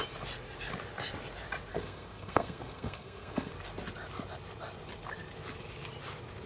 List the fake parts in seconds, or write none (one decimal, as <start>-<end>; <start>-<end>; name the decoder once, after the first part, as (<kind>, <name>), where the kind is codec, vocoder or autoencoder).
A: 1.7-3.5 (codec, SNAC)